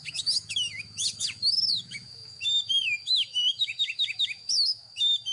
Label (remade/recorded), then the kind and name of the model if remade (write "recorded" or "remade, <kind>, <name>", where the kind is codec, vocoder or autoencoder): remade, autoencoder, DAC-VAE